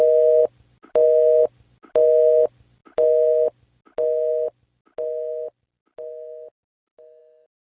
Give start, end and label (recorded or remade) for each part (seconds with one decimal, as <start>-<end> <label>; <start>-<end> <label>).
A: 0.0-7.7 recorded